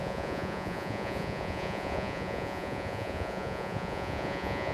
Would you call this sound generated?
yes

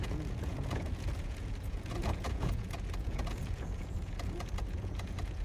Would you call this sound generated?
yes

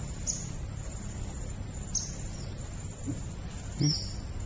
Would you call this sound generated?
no